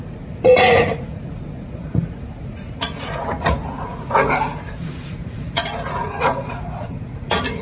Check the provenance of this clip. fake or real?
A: fake